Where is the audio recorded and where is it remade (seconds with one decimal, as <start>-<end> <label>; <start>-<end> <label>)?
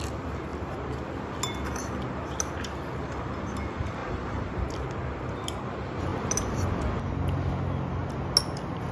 0.0-4.0 recorded; 4.0-4.6 remade; 4.6-8.9 recorded